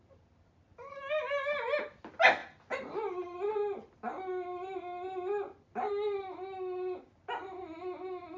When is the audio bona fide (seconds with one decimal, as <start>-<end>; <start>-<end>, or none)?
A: 0.0-8.4